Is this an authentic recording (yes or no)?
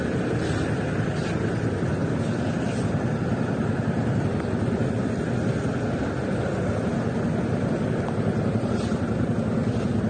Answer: yes